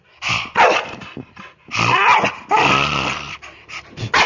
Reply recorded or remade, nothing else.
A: recorded